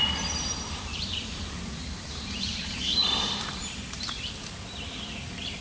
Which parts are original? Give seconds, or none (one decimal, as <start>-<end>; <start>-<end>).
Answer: 0.0-0.9; 4.3-5.6